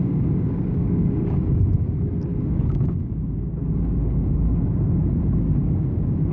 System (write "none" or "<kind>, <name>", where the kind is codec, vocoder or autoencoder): codec, DAC